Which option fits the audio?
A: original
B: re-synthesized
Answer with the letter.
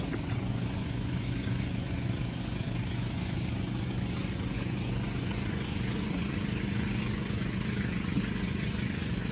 B